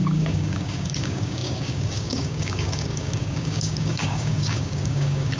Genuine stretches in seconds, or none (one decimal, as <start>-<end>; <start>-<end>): none